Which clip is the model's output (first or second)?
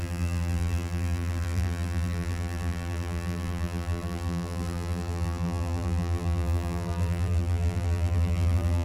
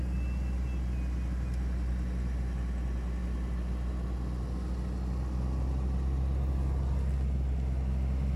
first